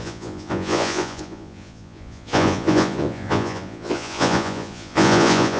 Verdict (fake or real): fake